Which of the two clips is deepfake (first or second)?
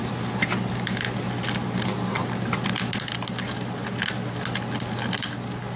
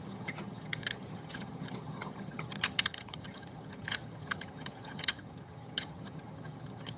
second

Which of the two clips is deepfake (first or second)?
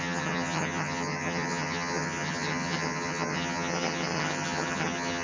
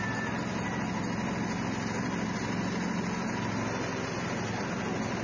first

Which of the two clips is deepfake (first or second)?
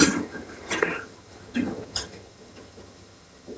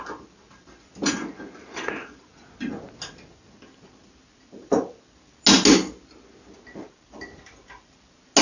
first